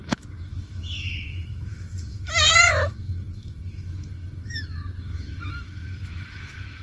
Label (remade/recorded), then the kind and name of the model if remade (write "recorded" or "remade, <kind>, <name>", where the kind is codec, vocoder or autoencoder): remade, autoencoder, DAC-VAE